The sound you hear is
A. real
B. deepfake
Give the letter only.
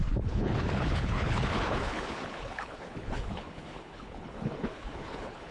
B